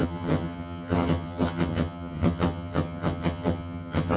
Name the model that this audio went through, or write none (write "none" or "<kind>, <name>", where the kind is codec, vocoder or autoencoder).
vocoder, HiFi-GAN